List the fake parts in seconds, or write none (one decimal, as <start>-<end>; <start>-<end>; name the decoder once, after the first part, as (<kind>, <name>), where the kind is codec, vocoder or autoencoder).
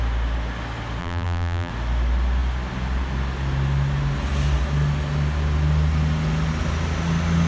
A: 1.0-1.7 (vocoder, BigVGAN v2)